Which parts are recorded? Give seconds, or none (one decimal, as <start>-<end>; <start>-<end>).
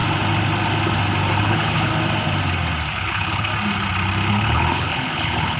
0.0-1.4; 1.9-2.9; 3.5-4.3